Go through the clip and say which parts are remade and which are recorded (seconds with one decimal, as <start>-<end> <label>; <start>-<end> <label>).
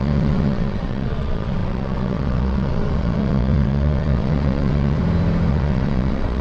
0.0-5.0 remade; 5.0-5.5 recorded; 5.5-6.4 remade